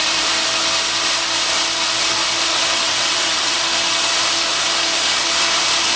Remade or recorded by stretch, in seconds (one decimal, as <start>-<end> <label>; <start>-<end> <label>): 0.0-2.5 recorded; 2.5-3.5 remade; 3.5-6.0 recorded